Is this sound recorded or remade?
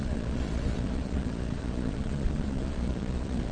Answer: remade